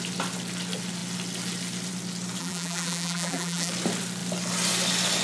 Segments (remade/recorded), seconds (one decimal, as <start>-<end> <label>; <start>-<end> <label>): 0.0-2.4 recorded; 2.4-3.7 remade; 3.7-5.2 recorded